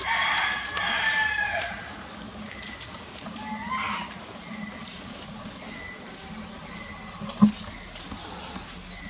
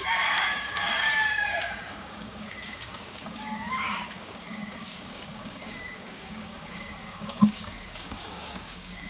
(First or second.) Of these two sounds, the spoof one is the second